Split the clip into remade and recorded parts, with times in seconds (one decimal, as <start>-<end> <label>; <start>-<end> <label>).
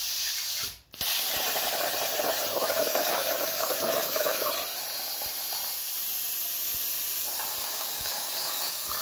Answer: 0.0-2.5 recorded; 2.5-4.5 remade; 4.5-7.6 recorded; 7.6-9.0 remade